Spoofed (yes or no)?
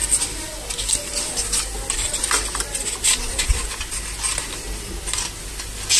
no